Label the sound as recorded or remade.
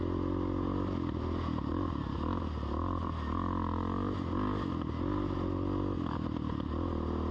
recorded